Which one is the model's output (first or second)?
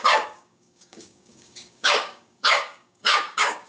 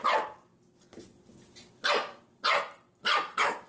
first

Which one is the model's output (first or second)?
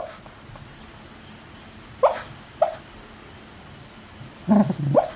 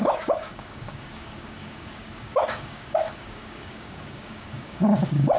second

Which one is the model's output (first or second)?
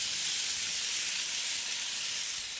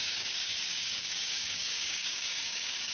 second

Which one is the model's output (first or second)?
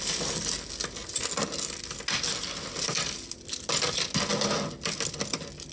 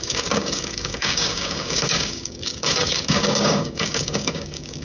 second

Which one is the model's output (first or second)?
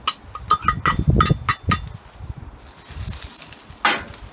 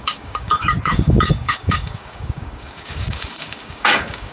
second